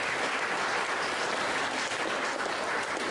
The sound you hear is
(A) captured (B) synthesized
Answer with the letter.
A